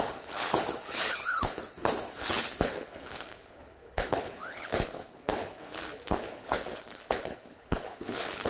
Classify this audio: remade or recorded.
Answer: remade